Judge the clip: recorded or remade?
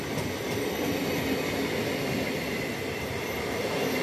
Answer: recorded